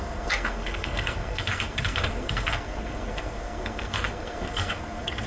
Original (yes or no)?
no